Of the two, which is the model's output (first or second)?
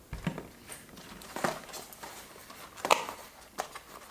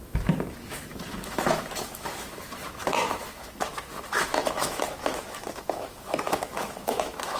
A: second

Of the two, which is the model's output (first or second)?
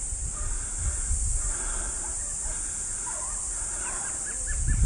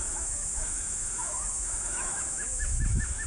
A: second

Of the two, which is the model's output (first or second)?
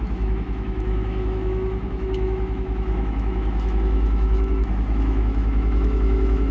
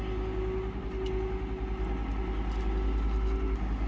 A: first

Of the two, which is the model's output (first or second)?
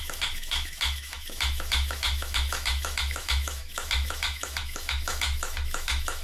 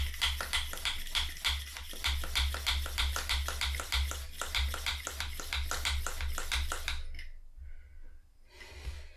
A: first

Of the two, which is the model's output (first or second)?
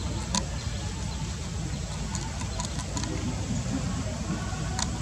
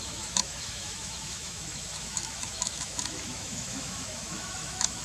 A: second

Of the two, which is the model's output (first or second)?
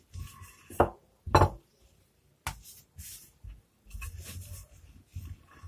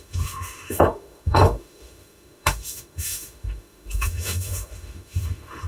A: second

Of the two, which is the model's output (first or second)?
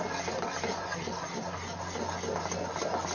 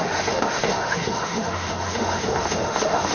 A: second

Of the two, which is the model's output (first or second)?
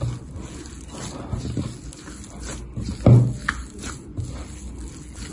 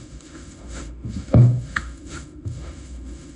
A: second